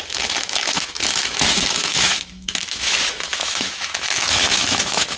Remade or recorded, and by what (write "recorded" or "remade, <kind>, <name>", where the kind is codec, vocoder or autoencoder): remade, autoencoder, DAC-VAE